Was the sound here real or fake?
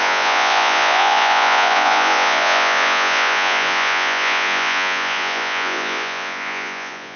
fake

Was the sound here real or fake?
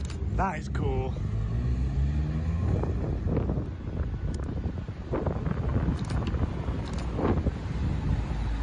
real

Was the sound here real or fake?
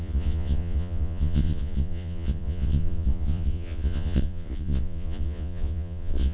fake